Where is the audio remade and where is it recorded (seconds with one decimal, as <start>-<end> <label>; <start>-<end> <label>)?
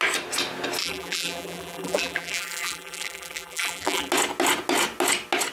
0.0-0.8 recorded; 0.8-4.1 remade; 4.1-5.5 recorded